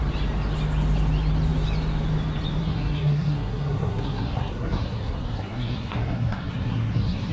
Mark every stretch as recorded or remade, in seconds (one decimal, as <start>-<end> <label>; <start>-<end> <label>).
0.0-2.6 recorded; 2.6-7.3 remade